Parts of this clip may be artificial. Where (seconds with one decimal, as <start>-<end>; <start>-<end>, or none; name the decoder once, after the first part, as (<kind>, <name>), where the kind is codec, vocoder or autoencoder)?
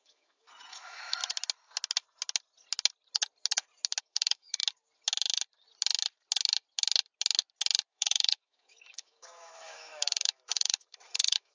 0.0-1.2 (autoencoder, DAC-VAE); 4.0-4.6; 7.9-11.5